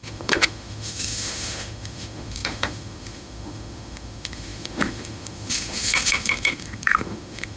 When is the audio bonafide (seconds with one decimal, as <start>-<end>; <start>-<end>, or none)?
none